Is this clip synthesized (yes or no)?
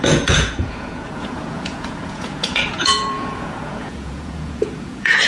yes